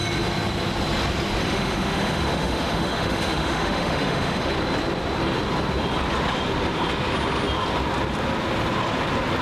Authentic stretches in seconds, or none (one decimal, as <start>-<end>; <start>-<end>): 0.0-1.4; 4.5-9.4